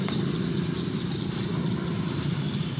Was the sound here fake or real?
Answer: real